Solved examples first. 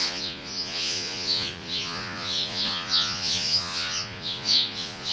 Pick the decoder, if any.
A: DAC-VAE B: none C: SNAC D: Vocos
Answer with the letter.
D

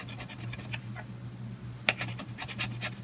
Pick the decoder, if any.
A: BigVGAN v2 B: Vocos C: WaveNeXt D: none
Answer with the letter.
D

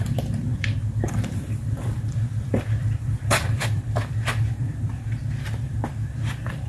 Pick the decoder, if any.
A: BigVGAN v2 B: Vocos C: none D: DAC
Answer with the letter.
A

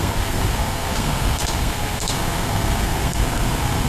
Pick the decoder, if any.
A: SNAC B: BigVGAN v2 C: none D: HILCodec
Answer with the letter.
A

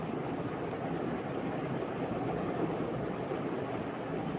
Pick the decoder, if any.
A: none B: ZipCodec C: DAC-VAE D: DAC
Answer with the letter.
A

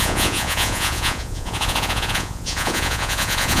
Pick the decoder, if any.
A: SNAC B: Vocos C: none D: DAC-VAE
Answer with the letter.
B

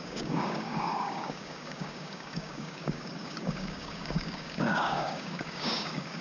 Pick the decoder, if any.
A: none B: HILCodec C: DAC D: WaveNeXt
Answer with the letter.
C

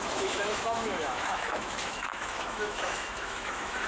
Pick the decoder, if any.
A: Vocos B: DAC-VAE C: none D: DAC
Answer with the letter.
B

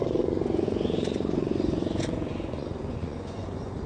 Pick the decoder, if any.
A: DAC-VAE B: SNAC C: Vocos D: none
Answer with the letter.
C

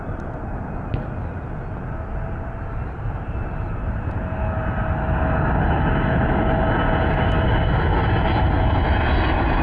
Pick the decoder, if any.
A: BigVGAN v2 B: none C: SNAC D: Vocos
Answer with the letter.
B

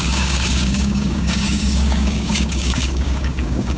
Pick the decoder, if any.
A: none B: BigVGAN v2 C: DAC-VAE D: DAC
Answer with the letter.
D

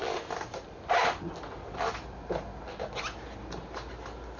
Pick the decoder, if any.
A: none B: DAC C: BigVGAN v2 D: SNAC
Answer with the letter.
A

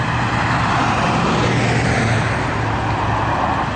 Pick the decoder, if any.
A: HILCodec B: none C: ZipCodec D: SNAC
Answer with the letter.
B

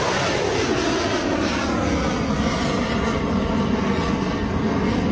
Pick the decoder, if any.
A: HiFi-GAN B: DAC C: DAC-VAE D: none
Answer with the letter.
D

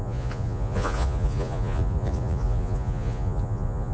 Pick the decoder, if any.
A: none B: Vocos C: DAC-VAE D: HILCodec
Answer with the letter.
B